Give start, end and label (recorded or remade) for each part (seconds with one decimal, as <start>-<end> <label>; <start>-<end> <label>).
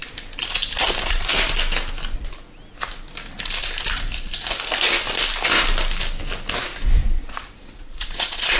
0.0-7.0 recorded; 7.0-8.6 remade